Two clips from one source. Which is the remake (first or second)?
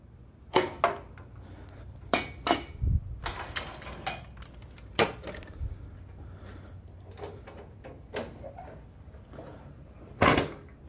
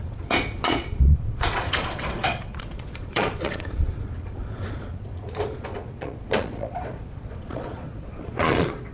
second